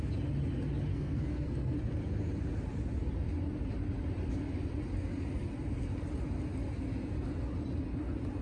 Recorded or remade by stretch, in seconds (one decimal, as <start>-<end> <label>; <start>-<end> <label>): 0.0-0.9 recorded; 0.9-1.8 remade; 1.8-8.4 recorded